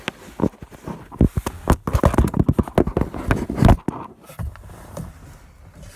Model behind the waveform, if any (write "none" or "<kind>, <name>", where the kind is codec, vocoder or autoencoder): none